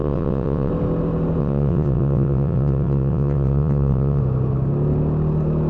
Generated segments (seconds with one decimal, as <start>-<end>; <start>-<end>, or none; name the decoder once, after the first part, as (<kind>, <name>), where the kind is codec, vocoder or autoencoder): 0.0-0.7 (vocoder, WaveNeXt); 1.4-4.2